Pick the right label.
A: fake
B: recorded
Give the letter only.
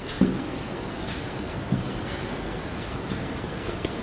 A